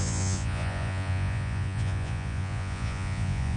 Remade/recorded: remade